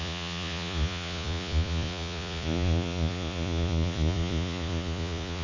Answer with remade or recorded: remade